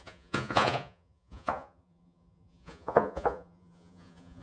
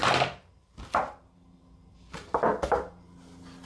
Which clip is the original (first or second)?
second